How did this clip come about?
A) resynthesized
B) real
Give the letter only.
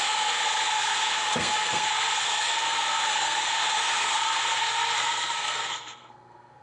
A